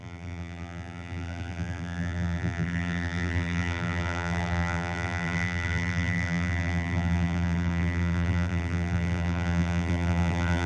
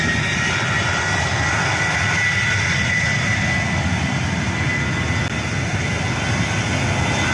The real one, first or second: second